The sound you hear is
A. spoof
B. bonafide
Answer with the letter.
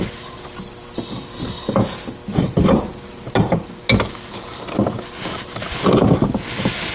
B